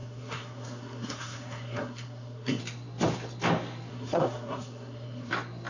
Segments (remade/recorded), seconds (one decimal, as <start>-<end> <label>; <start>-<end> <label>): 0.0-2.6 remade; 2.6-3.9 recorded; 3.9-5.3 remade; 5.3-5.7 recorded